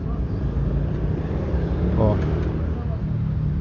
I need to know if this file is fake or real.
real